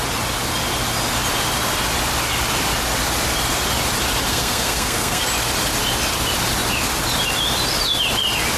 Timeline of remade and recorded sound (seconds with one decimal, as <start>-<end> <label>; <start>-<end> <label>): 0.0-4.3 recorded; 4.3-5.2 remade; 5.2-8.6 recorded

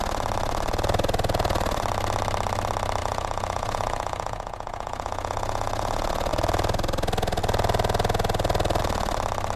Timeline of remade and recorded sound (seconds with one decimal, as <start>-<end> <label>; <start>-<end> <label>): 0.0-3.0 recorded; 3.0-6.3 remade; 6.3-9.6 recorded

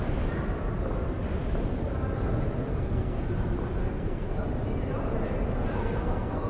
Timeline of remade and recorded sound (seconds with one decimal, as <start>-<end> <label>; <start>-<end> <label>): 0.0-2.7 recorded; 2.7-3.2 remade; 3.2-3.8 recorded; 3.8-4.5 remade; 4.5-5.7 recorded; 5.7-6.5 remade